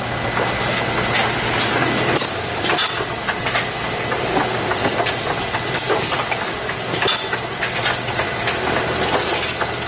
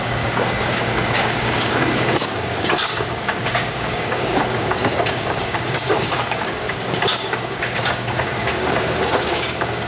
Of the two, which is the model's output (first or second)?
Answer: second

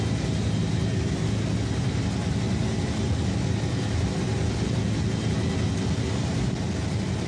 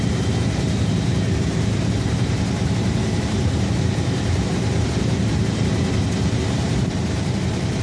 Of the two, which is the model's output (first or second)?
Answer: second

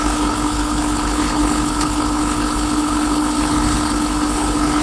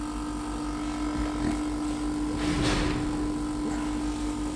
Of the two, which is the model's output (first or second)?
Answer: first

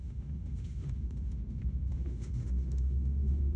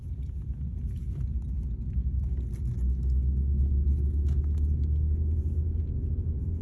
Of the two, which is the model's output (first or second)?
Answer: first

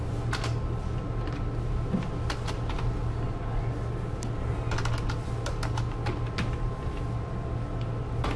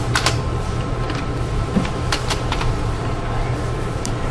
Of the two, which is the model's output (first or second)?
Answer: second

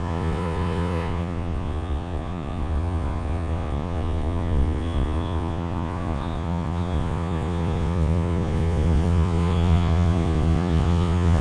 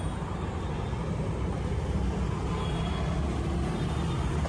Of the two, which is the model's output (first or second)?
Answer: first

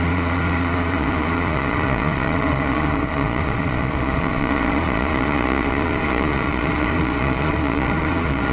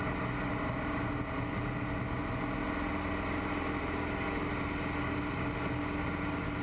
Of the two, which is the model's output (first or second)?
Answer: first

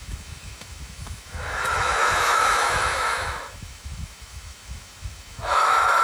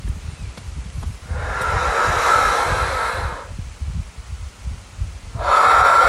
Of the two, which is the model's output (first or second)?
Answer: first